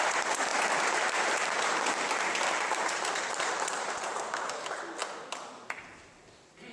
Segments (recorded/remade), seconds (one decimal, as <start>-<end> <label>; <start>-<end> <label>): 0.0-0.5 recorded; 0.5-4.5 remade; 4.5-6.7 recorded